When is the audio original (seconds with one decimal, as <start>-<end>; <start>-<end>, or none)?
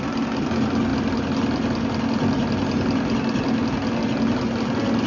0.0-5.1